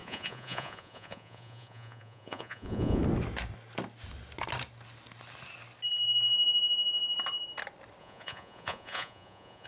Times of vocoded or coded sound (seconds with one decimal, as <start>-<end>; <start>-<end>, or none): 0.0-3.0; 8.0-9.7